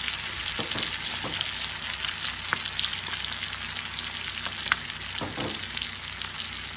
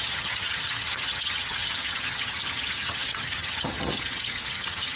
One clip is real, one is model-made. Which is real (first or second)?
first